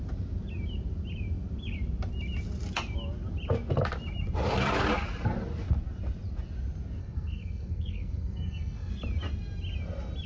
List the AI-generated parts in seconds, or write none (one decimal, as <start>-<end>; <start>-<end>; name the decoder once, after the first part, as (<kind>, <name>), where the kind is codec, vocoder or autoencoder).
7.0-8.9 (codec, SNAC)